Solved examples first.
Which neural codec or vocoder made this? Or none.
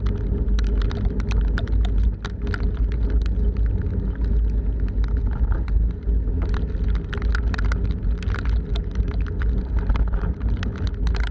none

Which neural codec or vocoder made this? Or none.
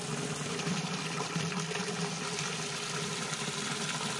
none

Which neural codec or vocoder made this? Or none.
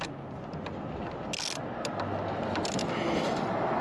none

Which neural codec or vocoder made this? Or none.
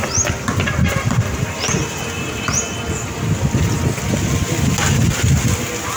none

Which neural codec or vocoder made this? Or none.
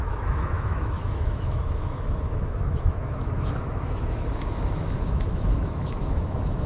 autoencoder, DAC-VAE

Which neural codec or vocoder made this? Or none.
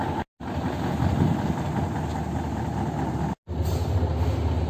none